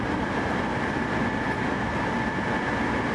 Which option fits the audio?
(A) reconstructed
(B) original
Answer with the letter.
B